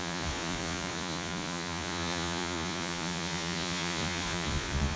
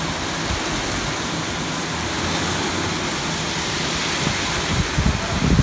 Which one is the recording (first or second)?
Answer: second